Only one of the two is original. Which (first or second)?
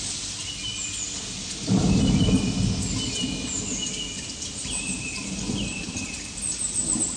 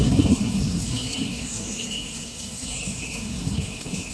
first